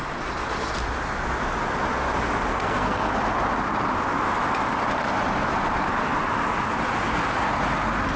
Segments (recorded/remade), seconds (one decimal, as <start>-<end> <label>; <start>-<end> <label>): 0.0-2.5 recorded; 2.5-3.1 remade; 3.1-8.2 recorded